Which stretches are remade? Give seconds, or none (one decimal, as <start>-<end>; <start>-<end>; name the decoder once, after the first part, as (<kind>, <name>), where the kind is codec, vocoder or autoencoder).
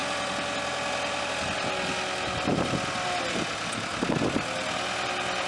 none